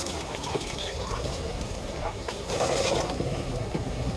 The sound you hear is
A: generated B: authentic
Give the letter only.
A